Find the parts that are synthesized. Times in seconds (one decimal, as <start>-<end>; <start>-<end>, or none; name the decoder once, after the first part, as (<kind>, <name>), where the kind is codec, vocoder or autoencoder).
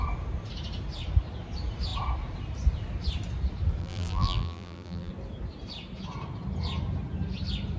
3.8-5.1 (vocoder, BigVGAN v2)